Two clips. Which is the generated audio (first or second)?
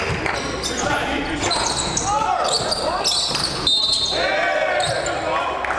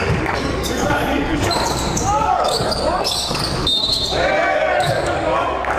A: second